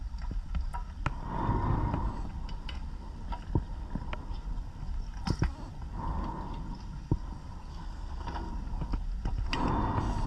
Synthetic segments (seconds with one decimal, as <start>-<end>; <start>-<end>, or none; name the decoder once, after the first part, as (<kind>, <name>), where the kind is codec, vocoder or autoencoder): 7.7-8.5 (codec, SNAC)